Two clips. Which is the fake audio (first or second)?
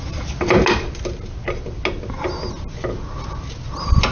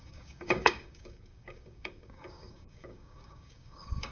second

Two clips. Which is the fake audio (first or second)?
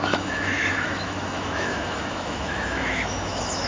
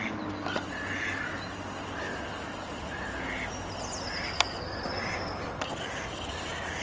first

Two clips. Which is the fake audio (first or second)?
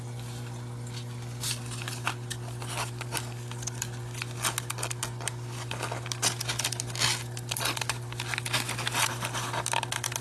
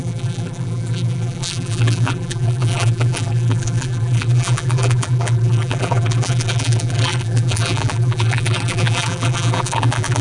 second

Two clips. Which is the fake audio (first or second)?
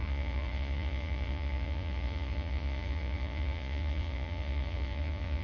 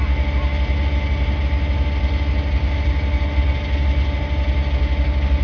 first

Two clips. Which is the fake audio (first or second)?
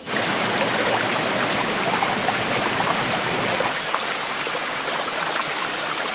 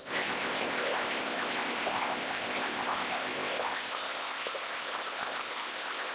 second